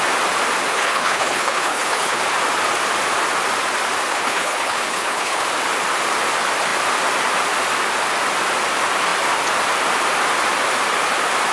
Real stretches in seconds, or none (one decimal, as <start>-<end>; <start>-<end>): 0.0-0.7; 2.2-4.1; 5.4-11.5